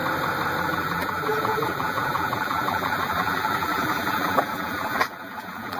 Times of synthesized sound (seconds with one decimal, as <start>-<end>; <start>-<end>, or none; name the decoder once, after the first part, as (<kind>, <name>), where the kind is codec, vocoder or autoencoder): 0.6-5.8 (vocoder, BigVGAN v2)